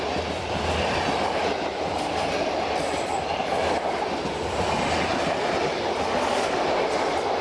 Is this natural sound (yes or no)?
yes